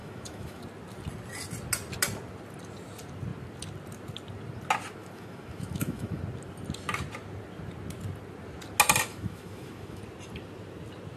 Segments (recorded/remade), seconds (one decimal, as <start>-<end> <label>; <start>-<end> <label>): 0.0-0.6 remade; 0.6-5.0 recorded; 5.0-6.2 remade; 6.2-9.1 recorded; 9.1-10.0 remade; 10.0-11.2 recorded